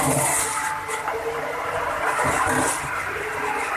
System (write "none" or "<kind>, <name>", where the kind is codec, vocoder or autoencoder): none